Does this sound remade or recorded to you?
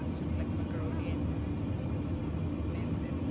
recorded